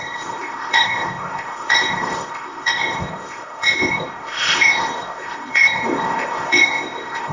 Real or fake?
fake